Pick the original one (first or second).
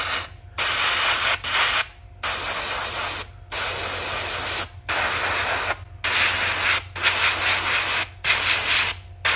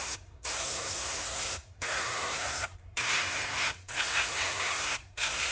first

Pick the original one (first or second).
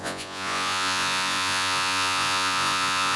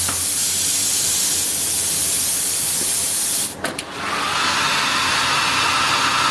second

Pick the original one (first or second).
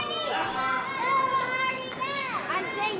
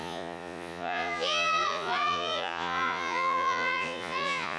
first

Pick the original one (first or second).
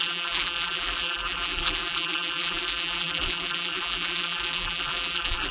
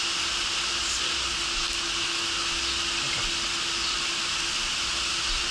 second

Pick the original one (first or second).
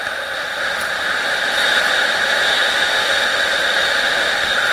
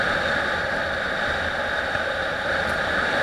first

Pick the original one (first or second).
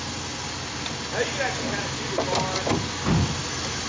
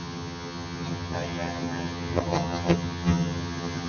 first